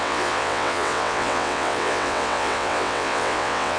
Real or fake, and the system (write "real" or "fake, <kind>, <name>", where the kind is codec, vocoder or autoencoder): fake, vocoder, WaveNeXt